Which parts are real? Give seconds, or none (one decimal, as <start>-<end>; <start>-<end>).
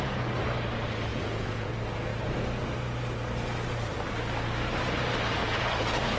0.0-1.1; 1.7-5.4